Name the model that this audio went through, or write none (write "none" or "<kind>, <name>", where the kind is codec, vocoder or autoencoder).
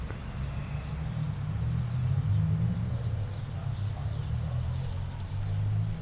none